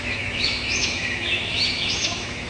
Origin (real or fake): fake